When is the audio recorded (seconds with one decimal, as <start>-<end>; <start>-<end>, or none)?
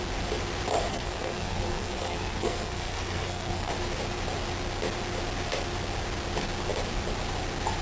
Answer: 0.0-0.9; 3.7-7.8